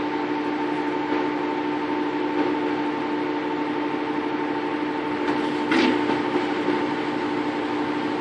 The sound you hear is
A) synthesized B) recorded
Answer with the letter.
B